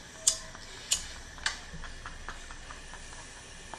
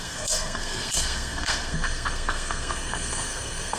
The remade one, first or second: second